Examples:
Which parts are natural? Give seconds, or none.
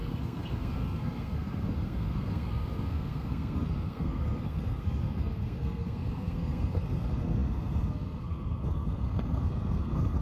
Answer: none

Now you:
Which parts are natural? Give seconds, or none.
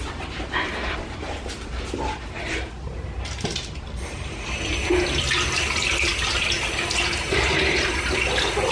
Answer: 0.0-8.7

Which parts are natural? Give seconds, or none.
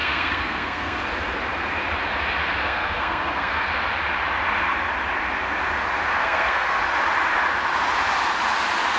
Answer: 1.0-2.6; 3.7-6.2; 6.8-9.0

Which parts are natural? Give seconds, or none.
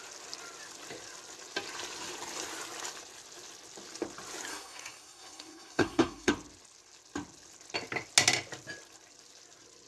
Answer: 0.0-4.5; 6.3-9.9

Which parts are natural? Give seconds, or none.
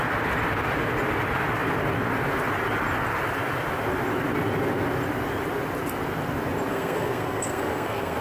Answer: 0.0-6.7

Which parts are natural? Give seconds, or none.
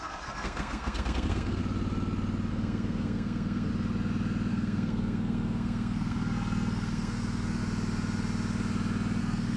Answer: 1.6-2.5; 3.7-4.5; 7.6-9.2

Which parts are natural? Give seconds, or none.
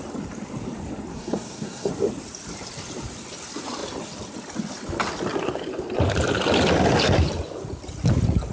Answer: 0.0-1.1; 1.9-8.5